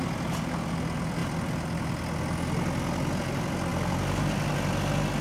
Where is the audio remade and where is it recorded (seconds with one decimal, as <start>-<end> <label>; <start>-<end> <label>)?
0.0-5.2 recorded